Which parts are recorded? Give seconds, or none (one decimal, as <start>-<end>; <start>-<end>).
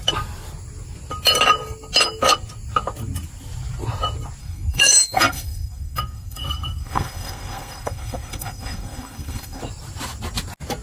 0.0-4.4; 9.6-10.8